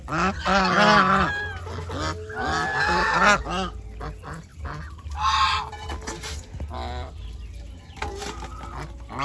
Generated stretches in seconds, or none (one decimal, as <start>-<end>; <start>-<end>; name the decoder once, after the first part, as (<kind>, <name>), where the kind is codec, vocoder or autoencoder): none